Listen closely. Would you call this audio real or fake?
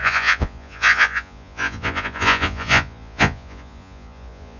fake